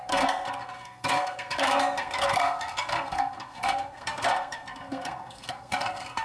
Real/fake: fake